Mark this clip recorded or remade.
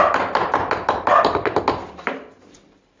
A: recorded